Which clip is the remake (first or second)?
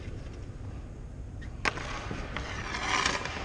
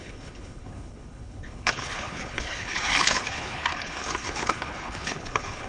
second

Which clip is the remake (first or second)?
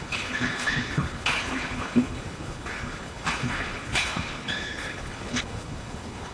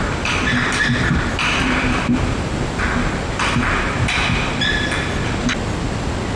first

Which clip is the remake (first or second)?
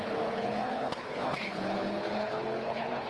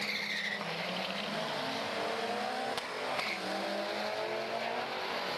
first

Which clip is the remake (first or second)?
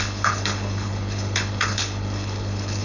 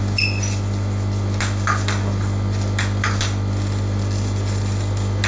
first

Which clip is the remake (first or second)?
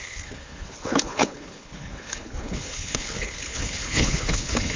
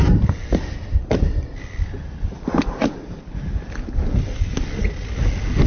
first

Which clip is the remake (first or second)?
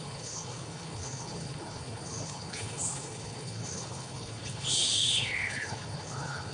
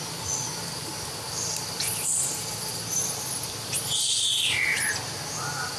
first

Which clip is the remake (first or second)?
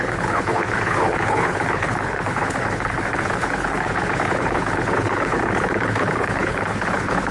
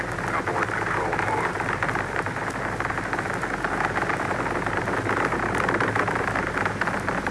first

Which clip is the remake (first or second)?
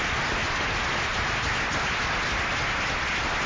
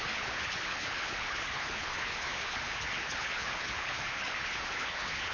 second